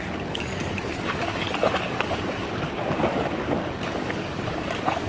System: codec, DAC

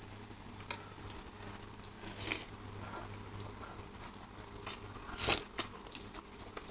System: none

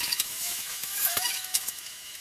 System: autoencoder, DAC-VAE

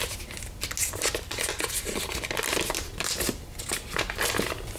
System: none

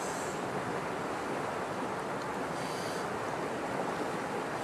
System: none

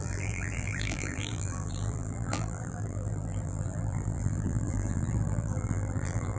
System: vocoder, BigVGAN v2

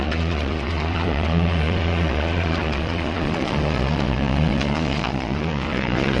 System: vocoder, Vocos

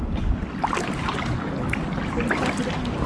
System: none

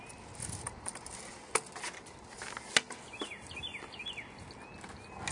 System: none